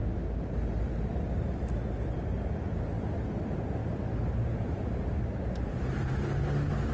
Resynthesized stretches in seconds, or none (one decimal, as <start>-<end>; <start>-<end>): 3.8-6.2